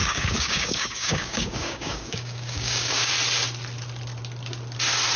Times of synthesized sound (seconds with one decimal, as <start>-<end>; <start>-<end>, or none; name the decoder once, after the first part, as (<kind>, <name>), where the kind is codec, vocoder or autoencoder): 0.0-3.1 (codec, DAC)